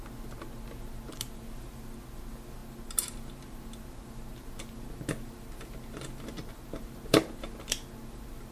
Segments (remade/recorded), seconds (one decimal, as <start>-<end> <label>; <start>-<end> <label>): 0.0-8.5 recorded